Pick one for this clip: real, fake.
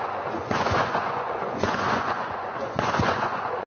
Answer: fake